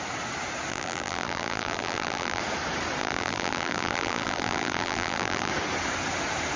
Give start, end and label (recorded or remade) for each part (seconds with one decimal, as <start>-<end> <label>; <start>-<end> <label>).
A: 0.0-0.7 recorded; 0.7-2.4 remade; 2.4-3.0 recorded; 3.0-5.5 remade; 5.5-6.6 recorded